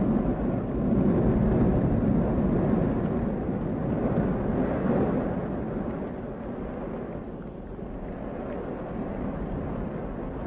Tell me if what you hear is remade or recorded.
recorded